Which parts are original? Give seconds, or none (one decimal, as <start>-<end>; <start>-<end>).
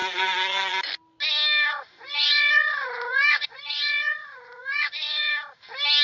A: 0.8-1.7; 5.3-6.0